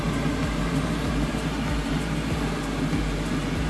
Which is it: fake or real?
real